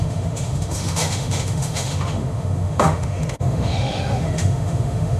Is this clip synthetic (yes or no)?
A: yes